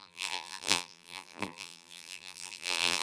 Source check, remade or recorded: remade